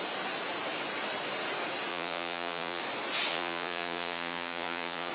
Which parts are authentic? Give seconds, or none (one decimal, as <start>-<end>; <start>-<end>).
0.0-1.9; 2.8-3.3